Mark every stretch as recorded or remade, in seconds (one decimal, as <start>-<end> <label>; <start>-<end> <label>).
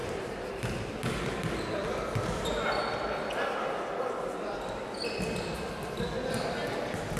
0.0-0.9 remade; 0.9-7.2 recorded